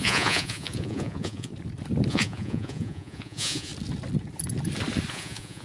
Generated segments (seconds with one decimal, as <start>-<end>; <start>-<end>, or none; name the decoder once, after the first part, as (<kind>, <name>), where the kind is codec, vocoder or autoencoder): 0.0-1.5 (vocoder, Vocos); 2.1-3.7; 5.1-5.6